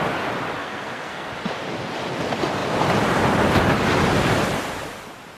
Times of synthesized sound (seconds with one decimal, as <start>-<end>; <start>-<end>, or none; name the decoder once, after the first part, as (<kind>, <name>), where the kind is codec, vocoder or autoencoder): 0.6-1.3 (codec, SNAC)